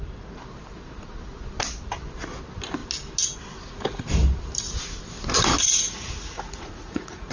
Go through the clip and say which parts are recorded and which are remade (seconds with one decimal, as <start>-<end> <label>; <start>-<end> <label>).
0.0-5.6 recorded; 5.6-7.3 remade